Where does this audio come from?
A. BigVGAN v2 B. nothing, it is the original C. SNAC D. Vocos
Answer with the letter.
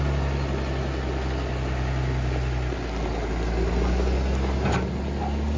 B